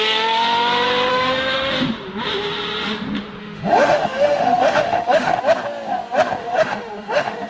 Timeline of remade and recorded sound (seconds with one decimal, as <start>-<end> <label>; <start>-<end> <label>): 0.0-1.1 recorded; 1.1-1.7 remade; 1.7-3.4 recorded; 3.4-5.4 remade; 5.4-6.4 recorded; 6.4-7.5 remade